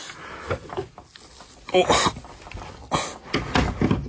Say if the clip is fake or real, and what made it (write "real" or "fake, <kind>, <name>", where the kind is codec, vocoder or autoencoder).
real